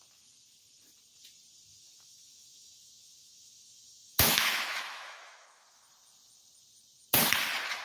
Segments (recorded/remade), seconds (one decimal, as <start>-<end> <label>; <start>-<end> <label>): 0.0-1.7 recorded; 1.7-5.8 remade; 5.8-7.8 recorded